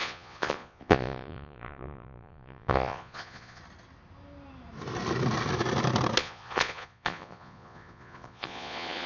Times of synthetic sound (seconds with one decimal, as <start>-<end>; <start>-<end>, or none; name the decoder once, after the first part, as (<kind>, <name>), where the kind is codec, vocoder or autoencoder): 0.0-3.6 (vocoder, Vocos); 6.2-9.1